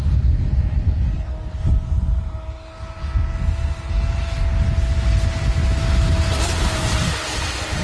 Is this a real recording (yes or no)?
yes